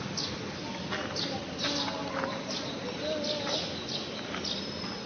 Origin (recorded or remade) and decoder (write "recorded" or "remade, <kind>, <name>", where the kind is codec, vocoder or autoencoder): recorded